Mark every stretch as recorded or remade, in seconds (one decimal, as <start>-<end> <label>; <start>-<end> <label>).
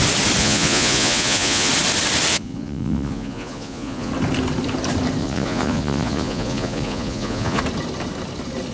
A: 0.0-0.4 recorded; 0.4-1.7 remade; 1.7-2.3 recorded; 2.3-4.1 remade; 4.1-5.2 recorded; 5.2-7.6 remade; 7.6-8.7 recorded